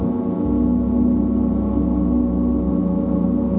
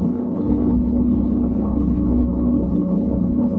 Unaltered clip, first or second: first